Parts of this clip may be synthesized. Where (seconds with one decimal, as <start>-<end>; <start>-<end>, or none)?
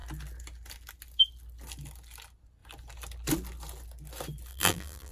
4.5-5.1